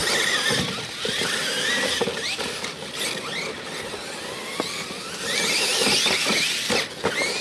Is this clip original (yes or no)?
yes